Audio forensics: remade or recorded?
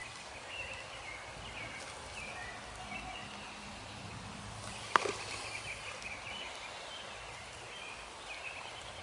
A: recorded